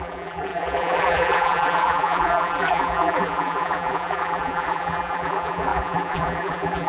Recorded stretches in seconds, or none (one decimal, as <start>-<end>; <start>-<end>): none